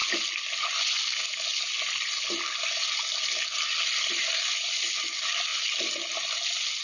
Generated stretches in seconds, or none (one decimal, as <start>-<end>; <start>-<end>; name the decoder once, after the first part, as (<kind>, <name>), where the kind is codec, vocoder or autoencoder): none